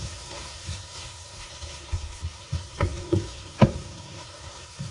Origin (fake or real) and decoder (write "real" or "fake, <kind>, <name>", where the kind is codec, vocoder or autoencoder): fake, codec, SNAC